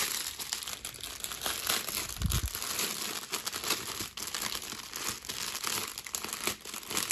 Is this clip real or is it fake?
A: real